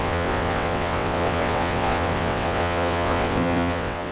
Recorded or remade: remade